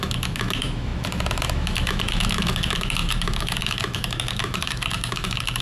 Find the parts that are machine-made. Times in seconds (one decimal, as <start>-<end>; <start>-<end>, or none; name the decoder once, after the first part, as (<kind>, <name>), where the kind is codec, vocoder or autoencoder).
0.0-5.6 (autoencoder, DAC-VAE)